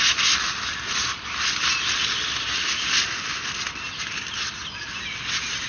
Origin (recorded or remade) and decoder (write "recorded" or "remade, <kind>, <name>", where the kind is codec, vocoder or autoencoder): recorded